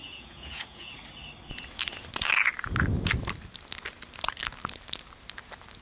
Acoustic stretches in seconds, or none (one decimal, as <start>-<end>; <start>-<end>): 0.9-5.8